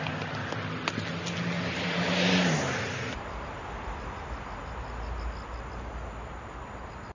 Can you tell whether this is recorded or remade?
recorded